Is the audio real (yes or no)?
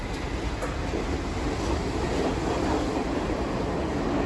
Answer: yes